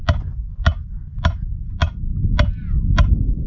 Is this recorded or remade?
recorded